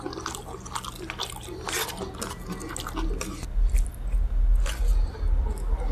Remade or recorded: recorded